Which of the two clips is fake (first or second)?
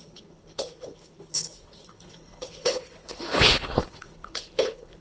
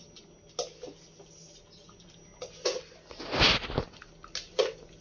first